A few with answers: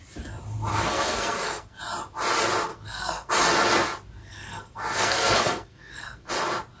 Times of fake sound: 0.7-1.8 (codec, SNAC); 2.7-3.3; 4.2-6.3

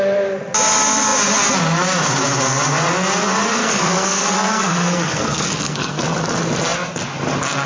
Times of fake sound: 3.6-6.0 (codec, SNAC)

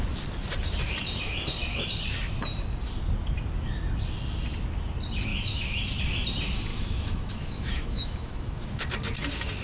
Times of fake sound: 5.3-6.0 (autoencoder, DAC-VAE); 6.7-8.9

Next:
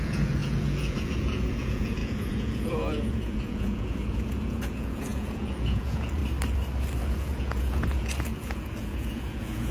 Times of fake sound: 0.0-6.2 (vocoder, Vocos); 7.0-9.7